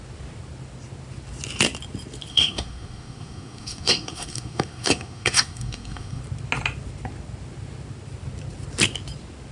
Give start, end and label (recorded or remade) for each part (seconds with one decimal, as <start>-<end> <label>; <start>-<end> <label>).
0.0-2.3 recorded; 2.3-6.2 remade; 6.2-9.5 recorded